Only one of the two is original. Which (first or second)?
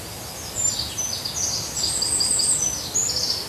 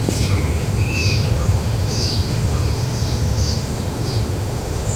first